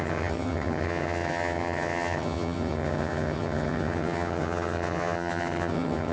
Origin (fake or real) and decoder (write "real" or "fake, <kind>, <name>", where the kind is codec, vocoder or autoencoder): fake, vocoder, HiFi-GAN